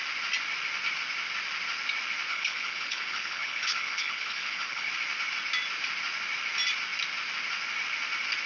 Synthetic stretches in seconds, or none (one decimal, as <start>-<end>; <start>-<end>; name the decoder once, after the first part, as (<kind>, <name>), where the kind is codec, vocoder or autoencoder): 2.3-4.9 (codec, HILCodec)